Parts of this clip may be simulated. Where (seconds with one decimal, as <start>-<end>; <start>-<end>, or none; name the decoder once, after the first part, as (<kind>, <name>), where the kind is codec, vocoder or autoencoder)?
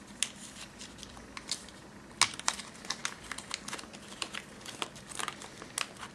none